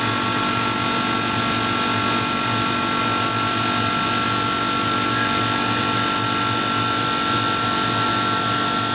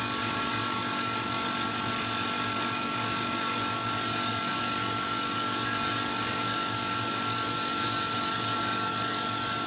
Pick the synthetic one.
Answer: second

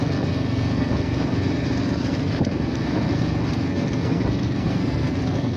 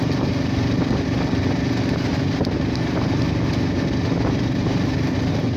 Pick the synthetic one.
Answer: first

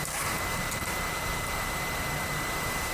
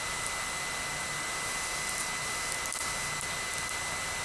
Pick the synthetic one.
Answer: first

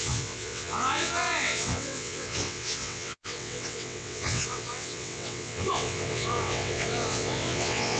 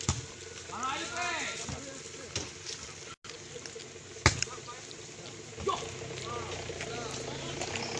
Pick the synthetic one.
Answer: first